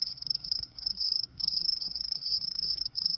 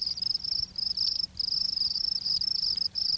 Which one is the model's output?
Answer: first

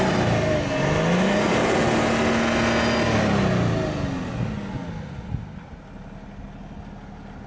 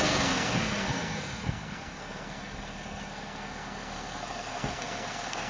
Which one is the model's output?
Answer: second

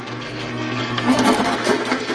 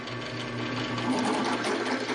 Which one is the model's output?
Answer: first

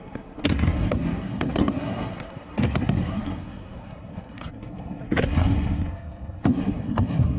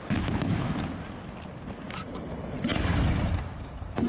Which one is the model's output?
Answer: first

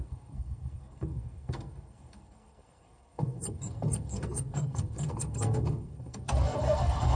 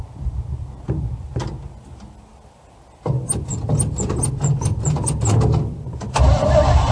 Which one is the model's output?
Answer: first